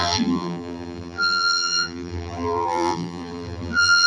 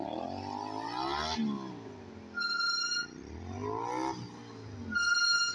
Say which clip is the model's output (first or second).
first